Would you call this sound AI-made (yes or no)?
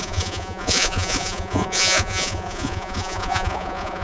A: yes